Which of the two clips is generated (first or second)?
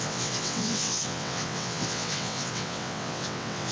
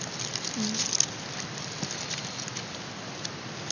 first